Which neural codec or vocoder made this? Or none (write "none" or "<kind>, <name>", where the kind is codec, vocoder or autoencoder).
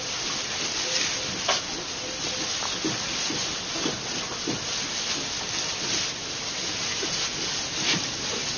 none